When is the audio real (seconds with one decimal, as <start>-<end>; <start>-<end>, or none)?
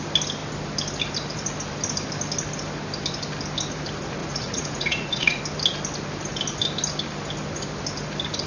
0.0-4.2; 5.4-8.5